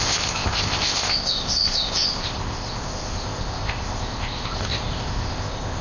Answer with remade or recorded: remade